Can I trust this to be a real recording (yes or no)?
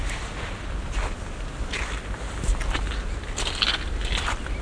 yes